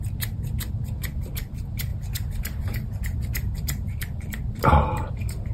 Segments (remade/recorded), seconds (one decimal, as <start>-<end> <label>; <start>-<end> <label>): 0.0-1.9 recorded; 1.9-4.6 remade; 4.6-5.5 recorded